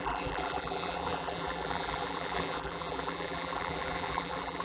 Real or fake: fake